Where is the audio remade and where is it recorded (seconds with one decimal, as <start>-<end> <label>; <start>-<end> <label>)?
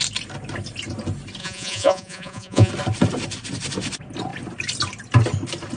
0.0-1.4 recorded; 1.4-2.7 remade; 2.7-5.8 recorded